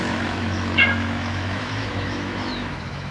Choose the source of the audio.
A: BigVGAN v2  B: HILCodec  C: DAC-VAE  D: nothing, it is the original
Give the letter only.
C